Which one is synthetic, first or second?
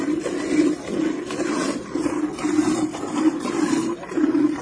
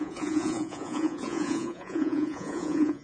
second